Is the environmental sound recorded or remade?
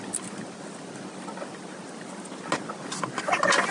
recorded